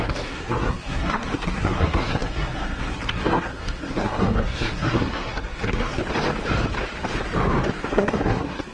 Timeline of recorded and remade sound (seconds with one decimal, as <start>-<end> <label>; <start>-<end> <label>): 0.0-6.0 remade; 6.0-7.9 recorded; 7.9-8.7 remade